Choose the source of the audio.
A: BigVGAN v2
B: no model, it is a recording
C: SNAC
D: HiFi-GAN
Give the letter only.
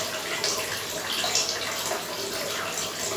B